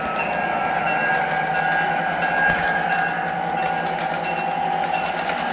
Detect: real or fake real